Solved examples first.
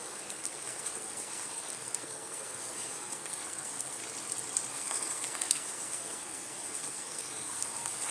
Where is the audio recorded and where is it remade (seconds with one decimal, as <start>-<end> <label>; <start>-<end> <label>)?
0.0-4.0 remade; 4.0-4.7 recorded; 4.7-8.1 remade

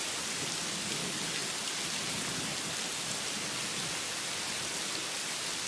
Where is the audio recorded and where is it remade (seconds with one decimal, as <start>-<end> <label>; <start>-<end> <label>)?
0.0-5.7 recorded

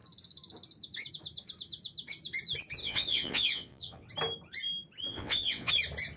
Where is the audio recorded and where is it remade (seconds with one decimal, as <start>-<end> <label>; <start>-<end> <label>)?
0.0-2.8 recorded; 2.8-4.1 remade; 4.1-5.1 recorded; 5.1-5.7 remade; 5.7-6.2 recorded